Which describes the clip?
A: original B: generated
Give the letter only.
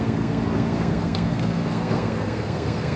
B